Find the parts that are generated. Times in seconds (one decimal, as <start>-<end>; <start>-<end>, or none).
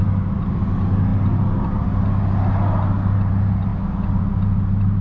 none